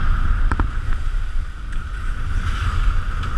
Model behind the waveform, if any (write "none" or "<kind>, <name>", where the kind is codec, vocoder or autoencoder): none